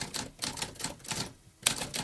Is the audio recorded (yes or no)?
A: yes